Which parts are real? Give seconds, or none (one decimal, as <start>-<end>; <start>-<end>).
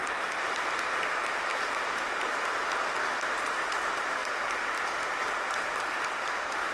0.0-0.6; 1.5-3.4; 4.2-6.2